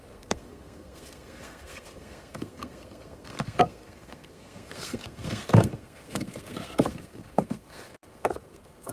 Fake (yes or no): yes